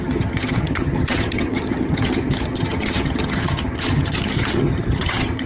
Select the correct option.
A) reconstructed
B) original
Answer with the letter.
A